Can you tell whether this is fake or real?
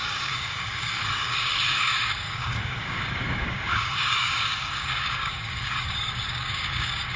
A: fake